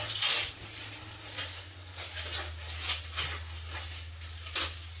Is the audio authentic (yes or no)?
yes